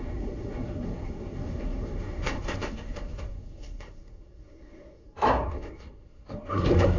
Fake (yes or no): yes